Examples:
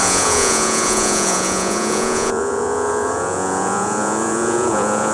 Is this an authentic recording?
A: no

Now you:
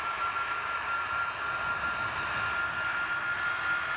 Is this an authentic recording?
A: yes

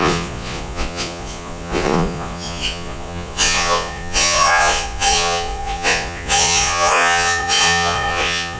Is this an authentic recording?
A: no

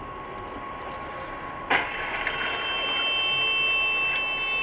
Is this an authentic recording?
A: yes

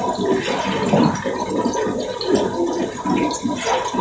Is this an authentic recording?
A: yes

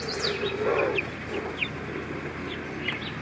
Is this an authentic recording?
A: yes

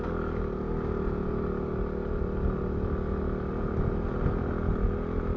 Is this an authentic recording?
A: yes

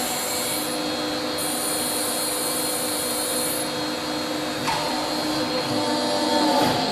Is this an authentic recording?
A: yes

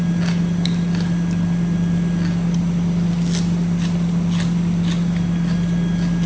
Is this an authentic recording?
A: yes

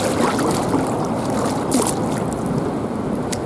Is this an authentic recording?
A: yes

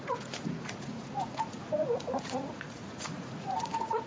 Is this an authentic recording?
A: no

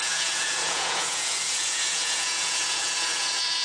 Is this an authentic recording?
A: no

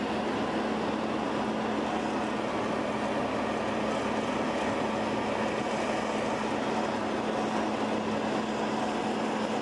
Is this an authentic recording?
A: yes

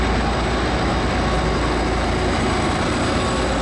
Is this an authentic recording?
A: yes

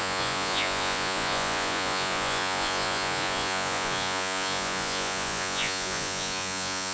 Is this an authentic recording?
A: no